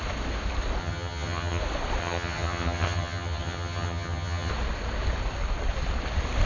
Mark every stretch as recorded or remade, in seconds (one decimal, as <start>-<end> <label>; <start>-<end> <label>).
0.0-0.8 recorded; 0.8-1.6 remade; 1.6-2.0 recorded; 2.0-4.5 remade; 4.5-6.5 recorded